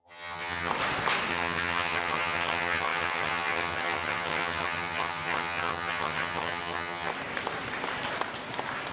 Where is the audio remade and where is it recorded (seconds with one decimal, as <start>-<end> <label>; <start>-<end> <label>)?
0.0-0.7 remade; 0.7-1.3 recorded; 1.3-7.1 remade; 7.1-8.9 recorded